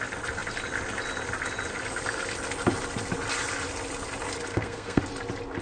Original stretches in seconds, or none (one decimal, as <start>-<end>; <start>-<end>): 0.0-4.5; 5.0-5.6